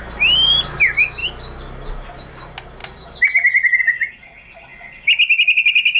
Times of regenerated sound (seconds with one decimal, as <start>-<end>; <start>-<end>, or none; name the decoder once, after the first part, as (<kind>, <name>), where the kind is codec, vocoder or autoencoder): none